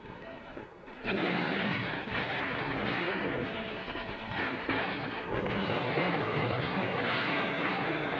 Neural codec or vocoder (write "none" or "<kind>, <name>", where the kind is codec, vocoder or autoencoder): codec, SNAC